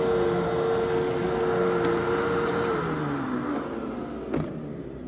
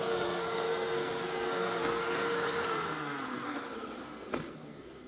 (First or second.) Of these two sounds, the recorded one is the first